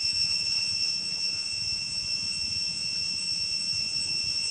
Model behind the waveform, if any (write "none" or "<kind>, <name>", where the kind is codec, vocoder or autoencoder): vocoder, Vocos